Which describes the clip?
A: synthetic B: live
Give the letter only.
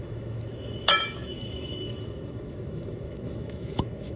A